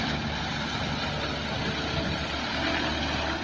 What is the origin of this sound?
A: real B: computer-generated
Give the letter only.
A